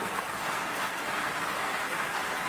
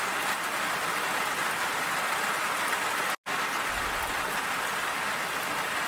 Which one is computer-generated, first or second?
first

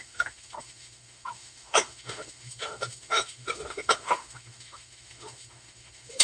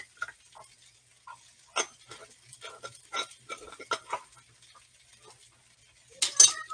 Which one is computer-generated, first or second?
first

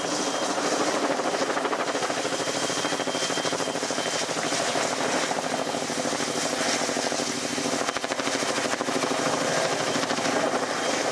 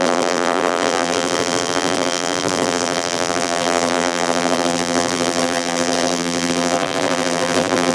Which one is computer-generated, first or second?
second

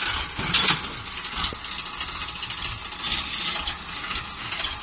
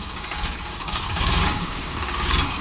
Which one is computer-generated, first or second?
second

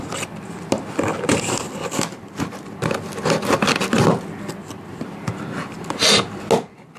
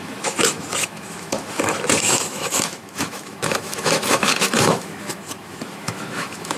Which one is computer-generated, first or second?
second